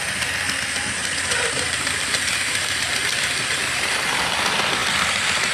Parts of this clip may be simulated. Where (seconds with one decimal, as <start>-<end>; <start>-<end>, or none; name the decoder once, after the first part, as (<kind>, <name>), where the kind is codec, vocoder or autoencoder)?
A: 1.0-4.3 (vocoder, BigVGAN v2)